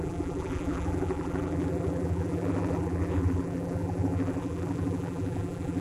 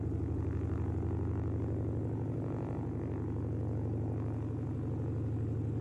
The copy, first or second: first